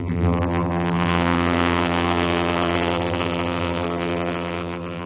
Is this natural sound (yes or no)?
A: no